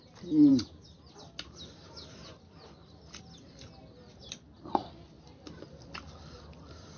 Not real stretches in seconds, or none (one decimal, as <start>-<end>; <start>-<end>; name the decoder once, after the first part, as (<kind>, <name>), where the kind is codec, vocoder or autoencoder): none